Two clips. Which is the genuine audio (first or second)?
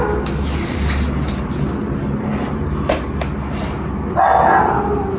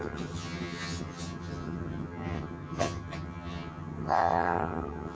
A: first